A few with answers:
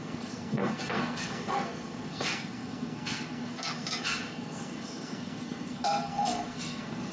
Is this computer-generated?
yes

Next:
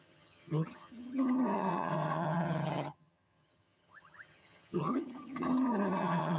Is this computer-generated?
yes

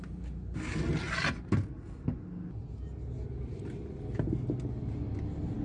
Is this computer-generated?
no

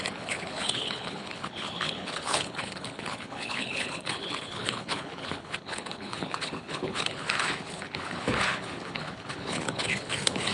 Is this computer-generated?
yes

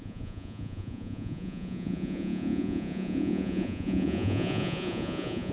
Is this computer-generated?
yes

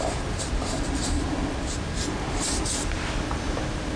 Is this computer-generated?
no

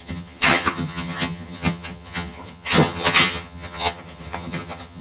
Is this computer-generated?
yes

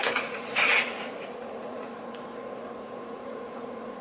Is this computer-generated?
yes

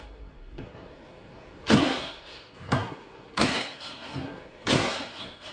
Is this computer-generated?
yes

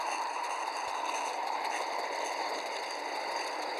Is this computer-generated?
no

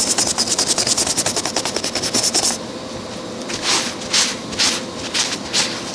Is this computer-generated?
no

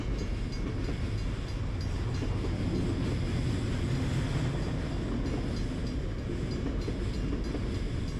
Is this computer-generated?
no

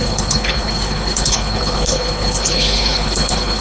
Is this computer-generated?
yes